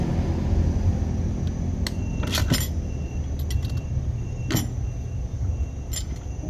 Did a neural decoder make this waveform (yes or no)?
no